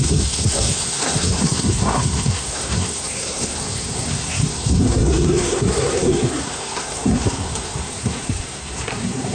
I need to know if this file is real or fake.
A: fake